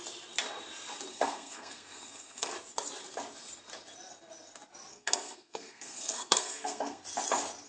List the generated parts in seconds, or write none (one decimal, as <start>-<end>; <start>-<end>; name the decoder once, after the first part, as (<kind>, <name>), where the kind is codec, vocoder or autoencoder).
1.1-2.5 (codec, SNAC); 4.9-7.0